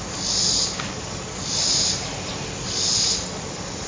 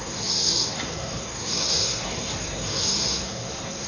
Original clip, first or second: first